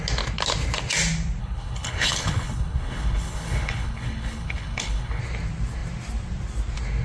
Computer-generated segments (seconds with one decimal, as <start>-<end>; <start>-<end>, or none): 1.4-5.2